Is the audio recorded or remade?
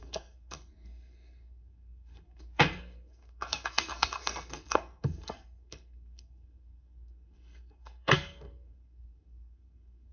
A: remade